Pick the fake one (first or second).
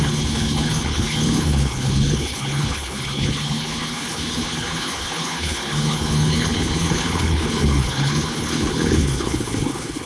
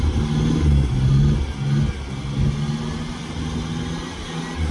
first